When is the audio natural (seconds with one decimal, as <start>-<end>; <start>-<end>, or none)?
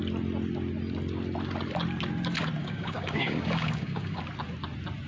0.0-2.6; 4.2-5.1